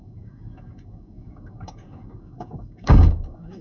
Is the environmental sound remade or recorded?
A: remade